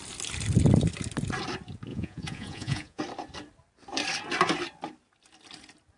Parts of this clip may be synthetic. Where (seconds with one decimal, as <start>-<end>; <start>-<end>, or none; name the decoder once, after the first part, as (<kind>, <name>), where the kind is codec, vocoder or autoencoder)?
1.9-3.0 (vocoder, Vocos)